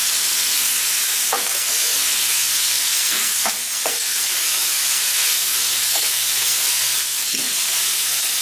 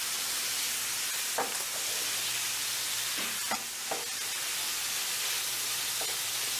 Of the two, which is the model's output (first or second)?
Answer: first